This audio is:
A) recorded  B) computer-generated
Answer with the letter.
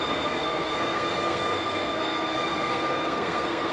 B